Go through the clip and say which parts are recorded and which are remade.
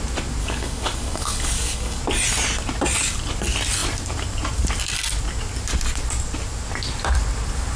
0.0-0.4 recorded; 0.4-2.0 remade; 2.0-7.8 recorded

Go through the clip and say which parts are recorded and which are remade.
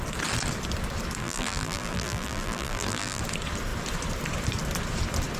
0.0-1.2 recorded; 1.2-3.2 remade; 3.2-5.4 recorded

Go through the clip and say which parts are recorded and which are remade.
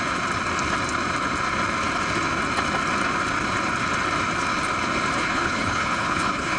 0.0-5.2 recorded; 5.2-6.6 remade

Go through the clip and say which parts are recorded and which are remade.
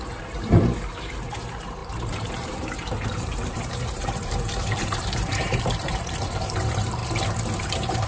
0.0-7.0 remade; 7.0-7.6 recorded; 7.6-8.1 remade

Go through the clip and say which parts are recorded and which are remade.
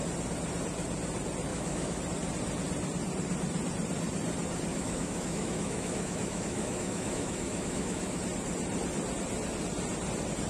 0.0-1.5 recorded; 1.5-2.0 remade; 2.0-4.7 recorded; 4.7-8.2 remade; 8.2-10.5 recorded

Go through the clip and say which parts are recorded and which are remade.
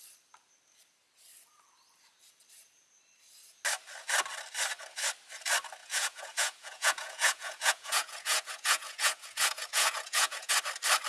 0.0-5.8 recorded; 5.8-10.5 remade; 10.5-11.1 recorded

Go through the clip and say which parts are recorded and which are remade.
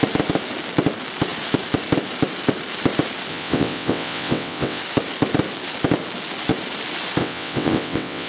0.0-3.3 recorded; 3.3-4.8 remade; 4.8-7.2 recorded; 7.2-8.3 remade